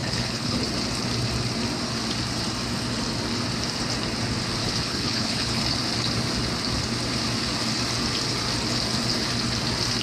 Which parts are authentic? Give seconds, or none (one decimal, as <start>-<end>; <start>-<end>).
0.6-4.6; 5.6-10.0

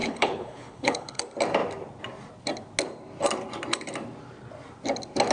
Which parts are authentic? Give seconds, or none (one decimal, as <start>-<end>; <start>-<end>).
1.2-5.3